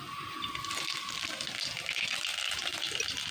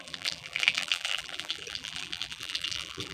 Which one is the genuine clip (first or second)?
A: first